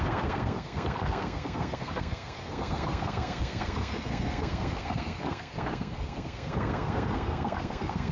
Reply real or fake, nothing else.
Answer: fake